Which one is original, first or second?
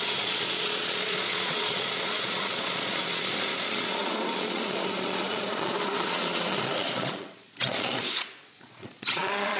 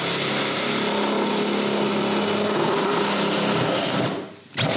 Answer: second